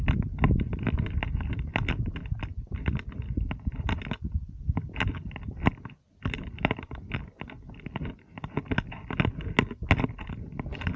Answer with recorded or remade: recorded